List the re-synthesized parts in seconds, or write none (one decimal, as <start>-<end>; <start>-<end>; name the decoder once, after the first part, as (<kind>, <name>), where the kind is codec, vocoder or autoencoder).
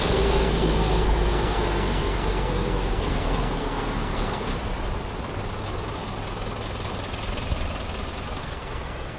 0.0-4.5 (codec, SNAC); 8.4-9.2